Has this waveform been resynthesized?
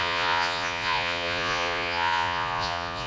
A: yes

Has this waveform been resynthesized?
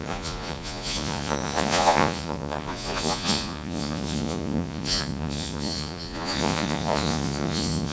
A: yes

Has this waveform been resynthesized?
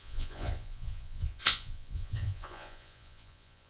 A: yes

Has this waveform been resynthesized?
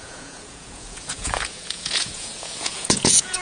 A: yes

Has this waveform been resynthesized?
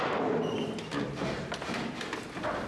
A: no